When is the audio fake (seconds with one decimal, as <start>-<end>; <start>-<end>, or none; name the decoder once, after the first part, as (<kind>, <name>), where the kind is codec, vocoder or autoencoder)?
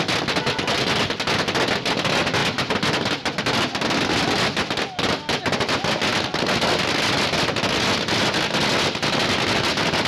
none